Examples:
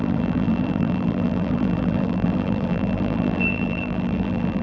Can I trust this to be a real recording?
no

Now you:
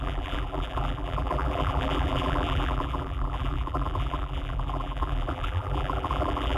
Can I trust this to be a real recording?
no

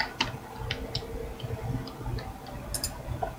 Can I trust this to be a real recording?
yes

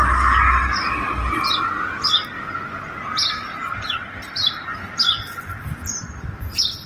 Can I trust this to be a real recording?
yes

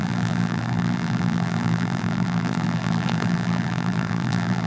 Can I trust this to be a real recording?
no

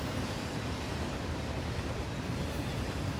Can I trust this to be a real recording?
no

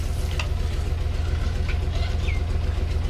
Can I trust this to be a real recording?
yes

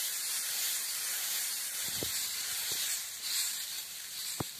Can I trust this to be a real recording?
no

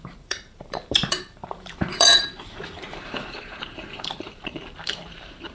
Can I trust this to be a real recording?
no